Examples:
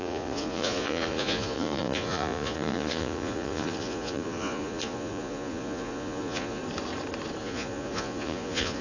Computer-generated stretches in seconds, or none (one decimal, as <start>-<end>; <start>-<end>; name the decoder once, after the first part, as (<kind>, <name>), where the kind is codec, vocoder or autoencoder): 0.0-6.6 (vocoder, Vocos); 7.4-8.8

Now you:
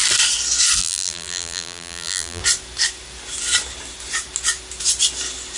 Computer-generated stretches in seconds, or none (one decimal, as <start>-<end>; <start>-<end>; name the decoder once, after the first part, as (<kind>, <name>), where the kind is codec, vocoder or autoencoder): 0.8-2.4 (vocoder, BigVGAN v2)

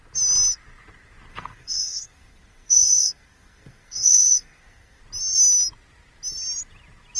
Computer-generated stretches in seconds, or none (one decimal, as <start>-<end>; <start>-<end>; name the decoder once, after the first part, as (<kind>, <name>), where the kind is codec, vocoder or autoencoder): 1.3-5.0 (codec, SNAC)

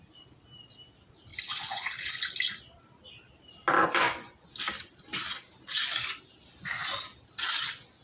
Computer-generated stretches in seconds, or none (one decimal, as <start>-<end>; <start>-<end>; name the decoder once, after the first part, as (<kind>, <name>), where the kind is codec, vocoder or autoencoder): 1.3-2.1 (vocoder, Vocos); 3.8-4.5